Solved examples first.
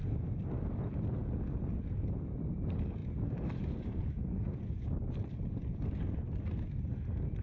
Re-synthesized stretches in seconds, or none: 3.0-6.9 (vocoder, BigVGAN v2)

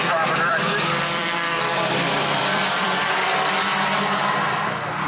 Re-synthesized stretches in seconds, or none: 0.5-3.6 (vocoder, BigVGAN v2)

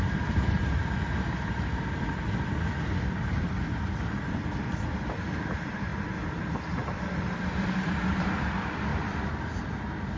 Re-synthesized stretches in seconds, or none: 0.0-0.8 (vocoder, BigVGAN v2); 3.2-5.9; 6.9-10.2

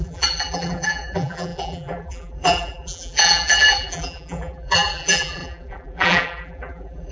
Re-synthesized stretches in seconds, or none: 0.0-7.1 (vocoder, BigVGAN v2)

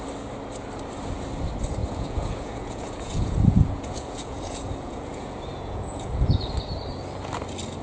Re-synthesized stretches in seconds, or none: 1.8-6.5 (vocoder, Vocos)

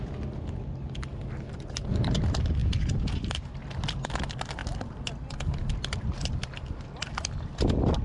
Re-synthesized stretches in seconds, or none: none

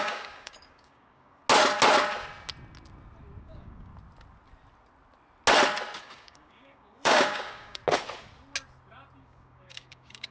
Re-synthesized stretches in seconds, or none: 0.0-1.4 (codec, DAC); 3.4-3.9; 6.0-7.8; 9.2-10.3

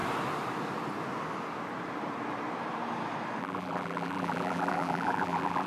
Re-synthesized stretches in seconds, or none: 3.4-5.7 (vocoder, BigVGAN v2)